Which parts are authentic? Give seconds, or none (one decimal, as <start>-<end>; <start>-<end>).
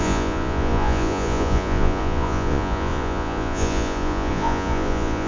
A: none